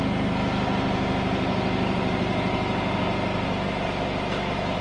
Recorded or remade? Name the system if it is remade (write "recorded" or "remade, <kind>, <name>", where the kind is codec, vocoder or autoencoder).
recorded